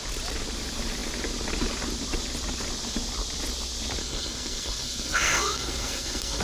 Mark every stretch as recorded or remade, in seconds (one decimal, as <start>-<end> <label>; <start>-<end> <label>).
0.0-4.0 recorded; 4.0-6.4 remade